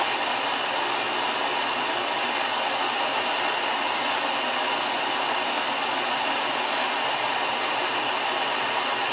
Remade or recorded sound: recorded